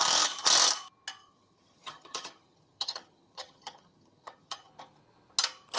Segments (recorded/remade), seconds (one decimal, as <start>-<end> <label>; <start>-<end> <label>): 0.0-1.2 recorded; 1.2-4.7 remade; 4.7-5.8 recorded